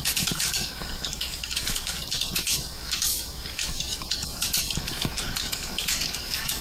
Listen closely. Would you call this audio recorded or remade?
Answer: remade